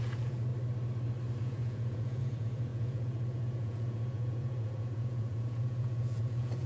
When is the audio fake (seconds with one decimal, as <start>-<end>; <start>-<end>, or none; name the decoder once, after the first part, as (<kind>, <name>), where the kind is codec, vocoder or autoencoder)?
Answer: 0.0-0.5 (vocoder, Vocos); 1.4-6.7